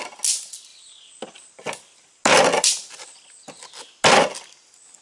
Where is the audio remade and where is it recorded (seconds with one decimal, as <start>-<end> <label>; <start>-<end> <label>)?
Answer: 0.0-5.0 recorded